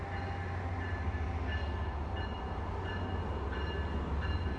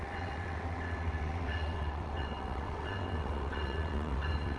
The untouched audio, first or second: first